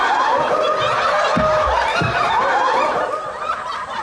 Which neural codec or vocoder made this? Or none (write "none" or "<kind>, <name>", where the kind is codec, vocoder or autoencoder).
vocoder, BigVGAN v2